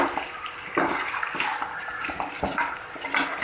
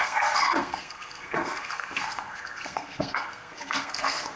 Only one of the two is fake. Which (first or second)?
second